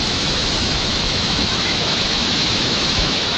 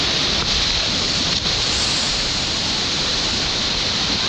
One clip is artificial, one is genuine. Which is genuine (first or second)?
second